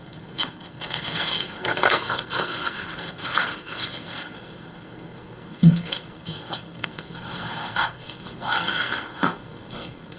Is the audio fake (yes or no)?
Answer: yes